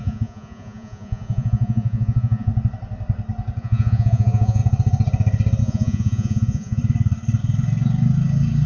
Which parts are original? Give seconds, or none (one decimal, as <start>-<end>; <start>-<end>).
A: 2.5-3.6; 4.6-5.6; 6.8-8.7

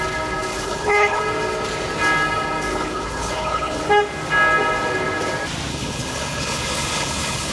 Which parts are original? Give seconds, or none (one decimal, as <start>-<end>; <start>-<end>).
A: 0.0-0.5; 1.2-2.7; 3.8-5.7

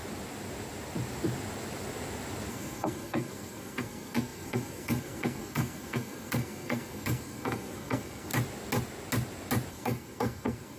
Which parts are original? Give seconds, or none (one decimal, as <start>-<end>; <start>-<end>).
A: 0.0-2.5; 8.3-9.7